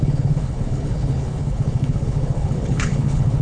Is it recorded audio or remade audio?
remade